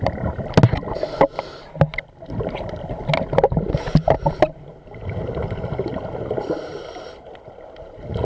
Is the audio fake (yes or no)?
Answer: no